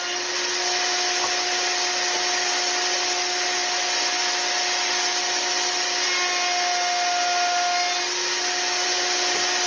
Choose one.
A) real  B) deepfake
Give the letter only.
A